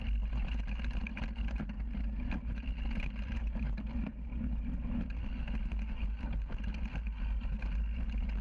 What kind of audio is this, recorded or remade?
recorded